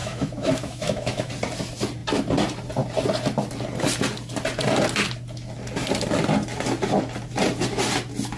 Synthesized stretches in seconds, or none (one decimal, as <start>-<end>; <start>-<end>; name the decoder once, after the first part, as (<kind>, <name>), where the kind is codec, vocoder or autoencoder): 0.0-1.3 (autoencoder, DAC-VAE)